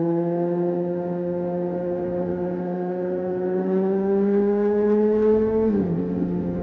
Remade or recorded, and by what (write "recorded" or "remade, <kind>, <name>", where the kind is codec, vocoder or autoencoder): remade, autoencoder, DAC-VAE